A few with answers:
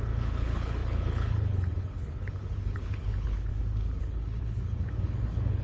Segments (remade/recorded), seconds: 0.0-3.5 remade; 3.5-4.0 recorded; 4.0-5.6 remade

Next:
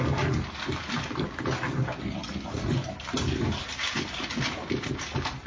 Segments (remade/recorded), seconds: 0.0-5.5 recorded

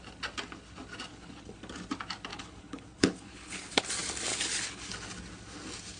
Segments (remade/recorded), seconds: 0.0-1.1 recorded; 1.1-1.6 remade; 1.6-2.3 recorded; 2.3-3.8 remade; 3.8-4.3 recorded; 4.3-4.9 remade; 4.9-6.0 recorded

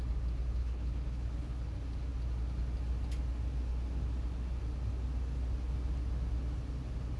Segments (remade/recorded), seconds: 0.0-0.6 recorded; 0.6-1.7 remade; 1.7-7.2 recorded

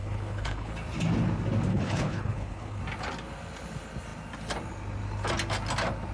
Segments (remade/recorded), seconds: 0.0-0.7 remade; 0.7-1.7 recorded; 1.7-2.8 remade; 2.8-6.1 recorded